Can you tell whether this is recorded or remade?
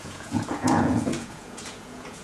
remade